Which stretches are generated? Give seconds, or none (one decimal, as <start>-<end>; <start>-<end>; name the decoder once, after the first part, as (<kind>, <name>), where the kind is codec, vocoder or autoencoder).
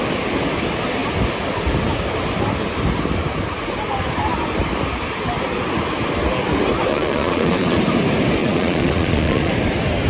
6.9-7.8 (vocoder, Vocos); 8.4-9.5